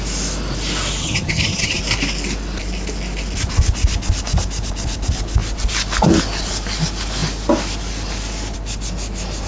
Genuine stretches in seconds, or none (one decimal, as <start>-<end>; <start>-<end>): 0.0-1.0; 1.8-9.5